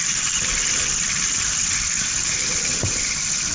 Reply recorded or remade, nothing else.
recorded